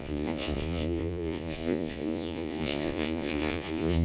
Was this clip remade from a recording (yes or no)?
yes